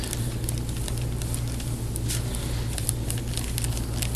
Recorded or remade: recorded